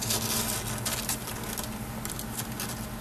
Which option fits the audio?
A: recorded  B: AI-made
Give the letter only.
A